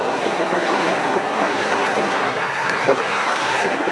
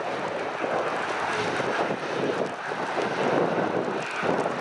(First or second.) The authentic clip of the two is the second